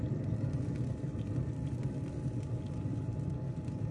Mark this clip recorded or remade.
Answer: remade